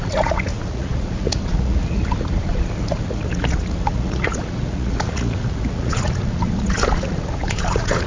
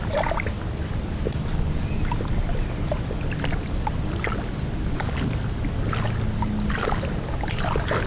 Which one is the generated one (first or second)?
first